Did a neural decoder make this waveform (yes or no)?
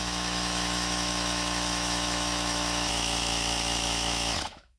yes